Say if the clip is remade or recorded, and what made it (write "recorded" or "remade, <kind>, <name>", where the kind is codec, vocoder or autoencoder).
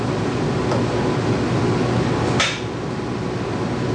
recorded